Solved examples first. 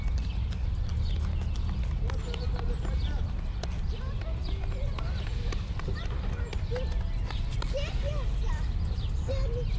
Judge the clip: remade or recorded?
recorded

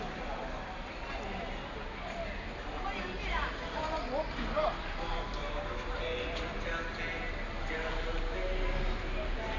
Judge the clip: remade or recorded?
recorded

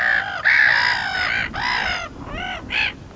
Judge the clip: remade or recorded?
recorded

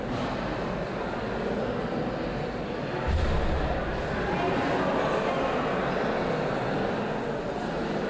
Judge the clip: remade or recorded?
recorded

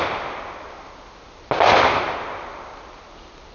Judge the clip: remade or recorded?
recorded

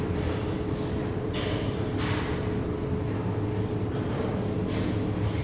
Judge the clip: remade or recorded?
recorded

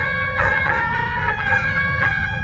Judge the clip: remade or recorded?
remade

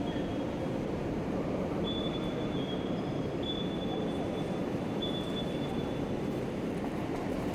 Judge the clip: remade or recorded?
remade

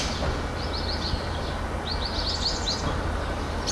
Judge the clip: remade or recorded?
recorded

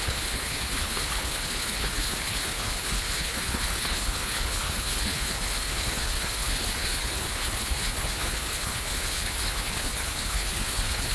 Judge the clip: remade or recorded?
remade